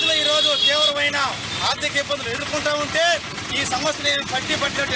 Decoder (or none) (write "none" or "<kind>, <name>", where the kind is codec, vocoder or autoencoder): none